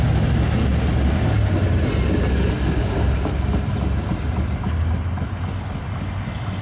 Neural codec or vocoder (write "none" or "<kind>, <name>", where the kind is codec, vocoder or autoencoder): none